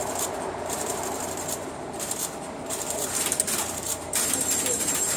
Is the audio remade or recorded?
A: remade